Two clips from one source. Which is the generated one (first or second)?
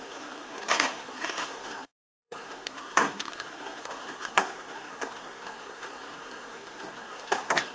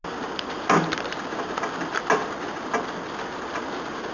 first